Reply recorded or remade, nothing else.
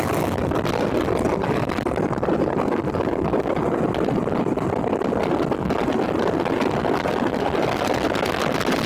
recorded